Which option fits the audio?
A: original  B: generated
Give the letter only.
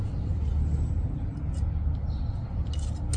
A